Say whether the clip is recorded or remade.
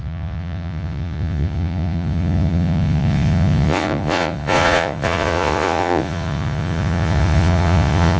remade